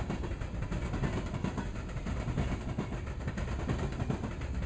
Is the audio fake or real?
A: real